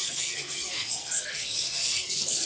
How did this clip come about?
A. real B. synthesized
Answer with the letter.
B